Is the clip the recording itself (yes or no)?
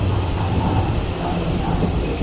yes